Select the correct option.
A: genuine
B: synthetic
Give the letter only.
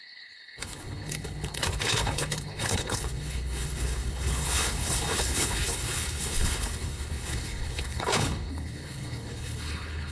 B